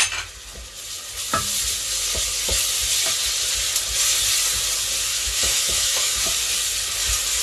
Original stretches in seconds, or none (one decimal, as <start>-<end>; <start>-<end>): 0.0-5.1; 6.3-7.4

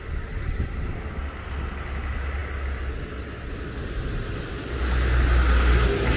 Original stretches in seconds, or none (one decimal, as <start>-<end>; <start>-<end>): 0.0-6.2

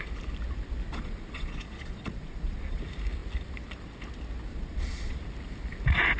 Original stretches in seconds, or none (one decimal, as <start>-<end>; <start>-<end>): 0.0-0.9; 2.8-4.5; 5.2-6.2

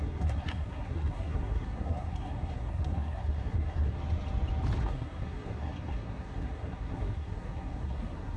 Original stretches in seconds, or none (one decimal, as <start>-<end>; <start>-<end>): 4.0-4.8

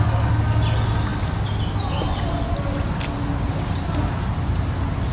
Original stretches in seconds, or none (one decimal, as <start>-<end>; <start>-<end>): 0.0-5.1

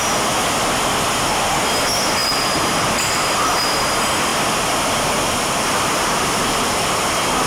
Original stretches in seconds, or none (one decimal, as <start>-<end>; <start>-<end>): 0.0-2.2; 3.2-4.3; 7.1-7.5

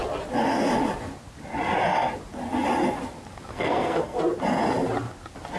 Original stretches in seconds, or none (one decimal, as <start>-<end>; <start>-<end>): 0.0-3.5; 4.2-5.6

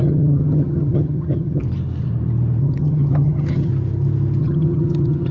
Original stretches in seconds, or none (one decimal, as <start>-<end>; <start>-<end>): 1.6-2.6; 3.7-4.4